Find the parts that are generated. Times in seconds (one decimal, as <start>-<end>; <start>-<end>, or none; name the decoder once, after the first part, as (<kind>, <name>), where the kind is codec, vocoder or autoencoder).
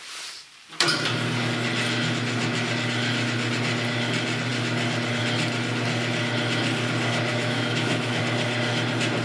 7.3-8.2 (autoencoder, DAC-VAE)